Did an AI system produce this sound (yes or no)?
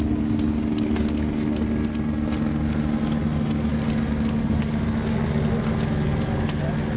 no